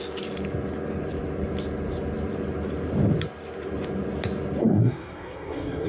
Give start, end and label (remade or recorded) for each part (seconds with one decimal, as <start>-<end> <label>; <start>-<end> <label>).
0.0-4.6 recorded; 4.6-5.9 remade